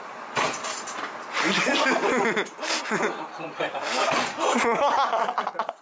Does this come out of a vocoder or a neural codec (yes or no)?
no